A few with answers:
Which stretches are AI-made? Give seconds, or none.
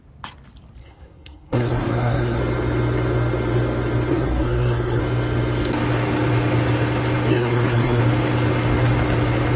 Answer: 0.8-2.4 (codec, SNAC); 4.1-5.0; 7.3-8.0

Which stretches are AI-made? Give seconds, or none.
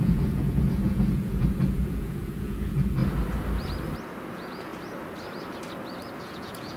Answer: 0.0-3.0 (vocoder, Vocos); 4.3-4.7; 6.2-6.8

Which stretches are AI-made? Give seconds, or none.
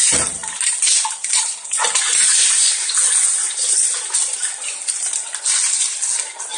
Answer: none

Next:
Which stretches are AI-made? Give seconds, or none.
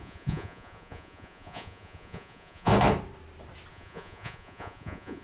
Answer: 0.0-2.7 (vocoder, Vocos); 3.7-5.2